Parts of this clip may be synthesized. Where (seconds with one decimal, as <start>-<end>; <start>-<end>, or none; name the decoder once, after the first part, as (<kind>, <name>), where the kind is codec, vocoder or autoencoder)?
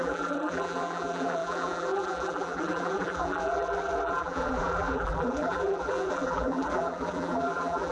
0.0-7.9 (vocoder, BigVGAN v2)